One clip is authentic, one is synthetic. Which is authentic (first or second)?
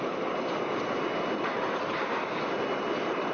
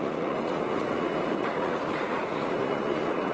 first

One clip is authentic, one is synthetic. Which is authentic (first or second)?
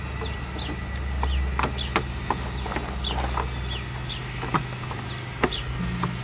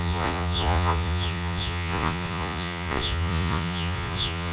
first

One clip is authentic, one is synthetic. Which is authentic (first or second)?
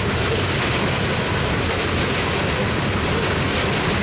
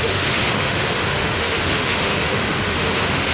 first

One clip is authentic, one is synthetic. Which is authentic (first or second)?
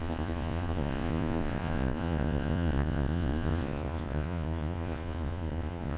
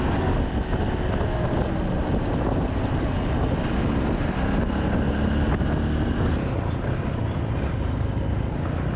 second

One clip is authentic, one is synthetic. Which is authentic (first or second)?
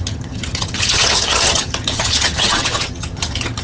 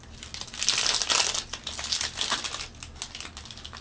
second